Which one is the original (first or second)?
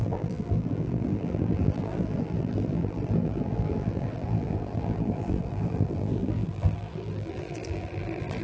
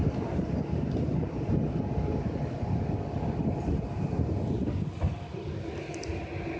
second